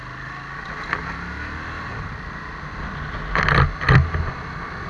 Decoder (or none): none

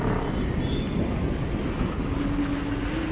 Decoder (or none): none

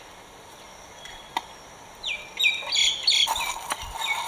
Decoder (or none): none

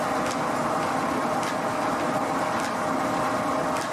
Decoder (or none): none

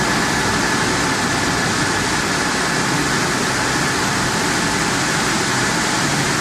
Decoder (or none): none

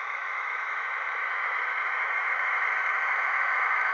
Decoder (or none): autoencoder, DAC-VAE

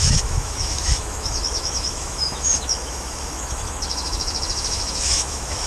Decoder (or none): autoencoder, DAC-VAE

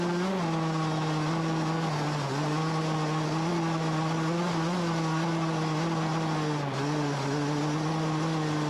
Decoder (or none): none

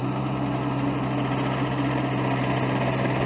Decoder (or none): none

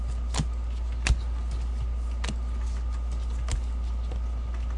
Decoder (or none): none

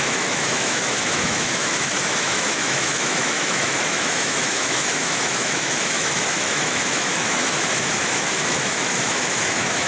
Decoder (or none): autoencoder, DAC-VAE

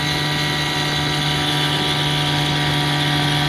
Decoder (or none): none